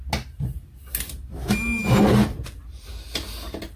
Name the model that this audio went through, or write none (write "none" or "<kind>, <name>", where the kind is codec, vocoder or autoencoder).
none